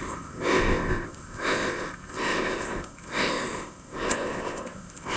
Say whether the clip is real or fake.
fake